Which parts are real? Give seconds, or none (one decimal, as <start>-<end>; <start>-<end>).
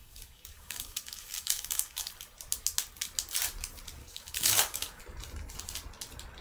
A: 2.1-4.0; 5.0-6.4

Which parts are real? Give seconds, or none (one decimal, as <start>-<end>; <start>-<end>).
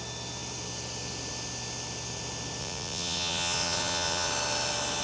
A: 0.0-2.6; 4.3-5.0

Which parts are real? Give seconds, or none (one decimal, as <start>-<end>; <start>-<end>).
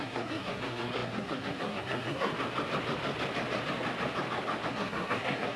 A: 2.3-4.7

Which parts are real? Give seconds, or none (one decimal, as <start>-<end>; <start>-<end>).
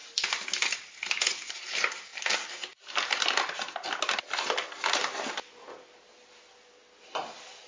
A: 0.0-7.7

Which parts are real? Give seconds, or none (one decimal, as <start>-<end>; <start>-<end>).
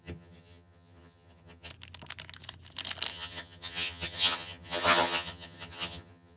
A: 1.7-3.1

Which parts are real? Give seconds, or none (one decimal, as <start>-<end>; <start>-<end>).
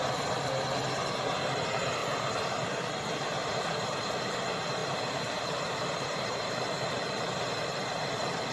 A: 0.0-2.0; 2.9-3.4; 4.1-4.8; 6.5-8.5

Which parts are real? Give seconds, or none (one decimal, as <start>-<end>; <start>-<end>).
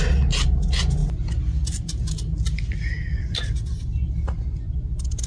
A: 0.0-5.3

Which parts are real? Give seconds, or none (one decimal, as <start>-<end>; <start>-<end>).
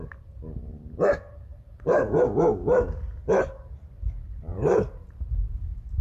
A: 0.0-1.5; 2.2-4.5; 5.3-6.0